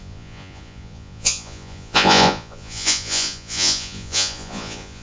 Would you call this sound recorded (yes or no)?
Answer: no